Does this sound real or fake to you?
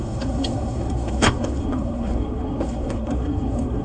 fake